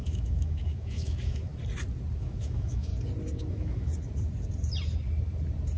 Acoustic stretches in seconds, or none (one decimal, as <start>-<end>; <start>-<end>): 1.5-2.2; 2.9-3.5; 3.9-5.8